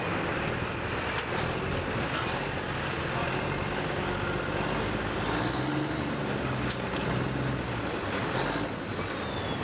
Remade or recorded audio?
recorded